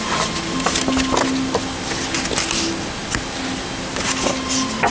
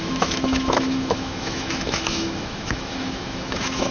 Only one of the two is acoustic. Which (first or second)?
first